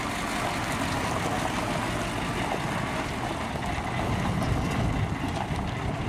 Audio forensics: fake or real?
real